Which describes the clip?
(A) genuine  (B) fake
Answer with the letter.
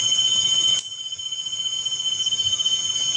B